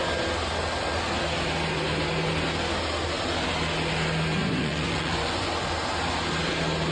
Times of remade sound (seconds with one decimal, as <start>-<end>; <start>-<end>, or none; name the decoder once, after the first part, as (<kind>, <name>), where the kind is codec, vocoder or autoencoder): 4.4-5.5 (vocoder, Vocos)